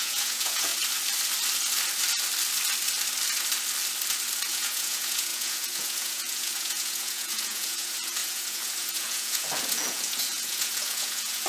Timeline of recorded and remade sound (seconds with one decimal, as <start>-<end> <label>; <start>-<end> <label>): 0.0-0.7 remade; 0.7-4.5 recorded; 4.5-11.5 remade